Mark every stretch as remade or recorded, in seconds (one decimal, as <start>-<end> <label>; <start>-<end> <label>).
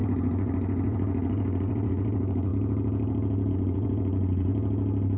0.0-2.5 remade; 2.5-3.5 recorded; 3.5-4.5 remade; 4.5-5.2 recorded